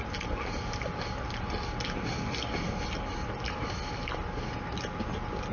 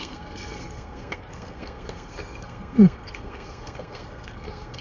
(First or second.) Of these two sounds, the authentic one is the first